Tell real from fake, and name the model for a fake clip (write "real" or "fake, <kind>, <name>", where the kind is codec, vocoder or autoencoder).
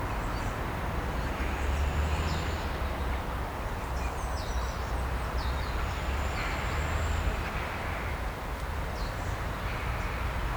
real